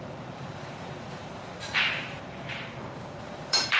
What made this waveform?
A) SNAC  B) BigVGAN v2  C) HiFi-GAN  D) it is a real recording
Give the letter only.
B